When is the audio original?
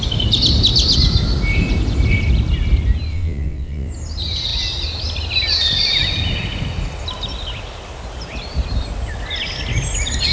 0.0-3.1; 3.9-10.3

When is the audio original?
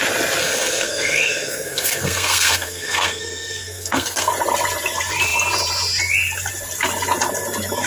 0.0-0.4; 4.3-7.9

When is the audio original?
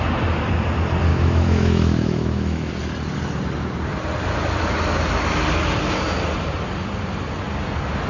0.0-1.1; 2.7-8.1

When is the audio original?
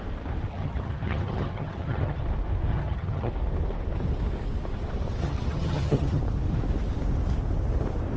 0.0-0.5; 2.2-2.7; 3.3-5.2; 6.2-8.2